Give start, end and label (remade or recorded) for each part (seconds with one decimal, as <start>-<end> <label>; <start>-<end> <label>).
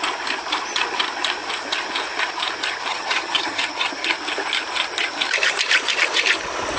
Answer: 0.0-2.9 recorded; 2.9-3.9 remade; 3.9-6.8 recorded